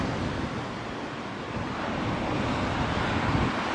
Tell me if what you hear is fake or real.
real